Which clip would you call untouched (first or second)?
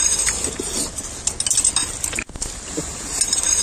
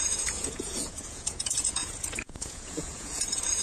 first